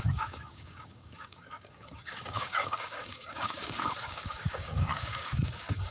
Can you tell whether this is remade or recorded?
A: remade